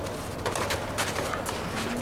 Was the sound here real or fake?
real